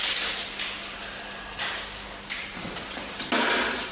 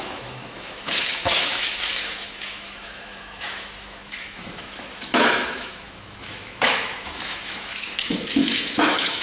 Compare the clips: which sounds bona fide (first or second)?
first